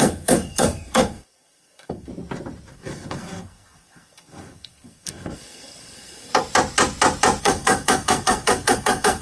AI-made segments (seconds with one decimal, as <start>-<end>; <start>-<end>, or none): 0.0-2.1; 2.7-6.3; 7.4-9.2